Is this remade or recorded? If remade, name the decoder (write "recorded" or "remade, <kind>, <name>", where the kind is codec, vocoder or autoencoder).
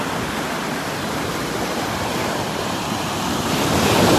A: remade, vocoder, BigVGAN v2